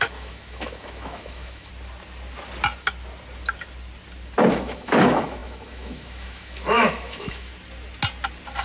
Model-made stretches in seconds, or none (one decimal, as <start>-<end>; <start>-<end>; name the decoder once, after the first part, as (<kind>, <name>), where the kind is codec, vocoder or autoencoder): 0.0-1.7 (autoencoder, DAC-VAE); 4.5-7.5